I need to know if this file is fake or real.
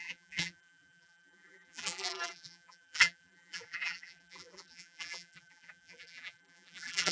fake